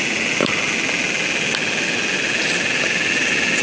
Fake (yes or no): no